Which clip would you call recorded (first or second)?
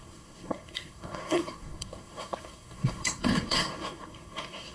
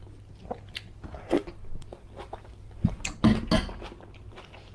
second